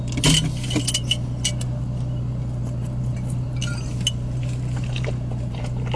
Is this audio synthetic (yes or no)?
no